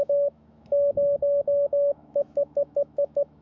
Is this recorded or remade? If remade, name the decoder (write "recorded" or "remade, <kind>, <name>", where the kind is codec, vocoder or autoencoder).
remade, autoencoder, DAC-VAE